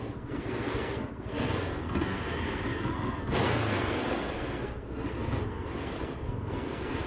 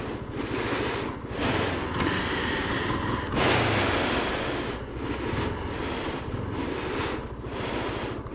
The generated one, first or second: first